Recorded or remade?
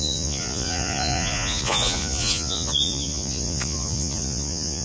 remade